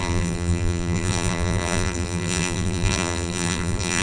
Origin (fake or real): fake